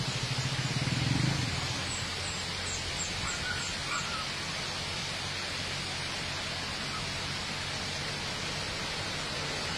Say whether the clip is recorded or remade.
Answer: recorded